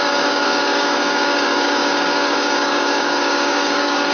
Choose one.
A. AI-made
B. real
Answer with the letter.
A